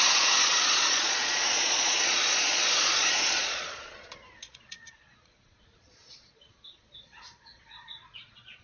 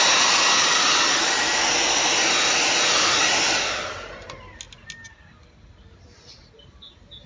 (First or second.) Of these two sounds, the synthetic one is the first